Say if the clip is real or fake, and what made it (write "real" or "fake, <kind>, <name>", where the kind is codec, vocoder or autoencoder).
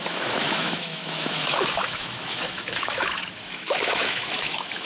fake, autoencoder, DAC-VAE